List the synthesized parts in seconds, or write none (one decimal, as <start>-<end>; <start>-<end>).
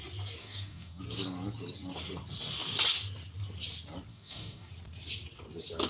0.4-1.0; 4.1-4.7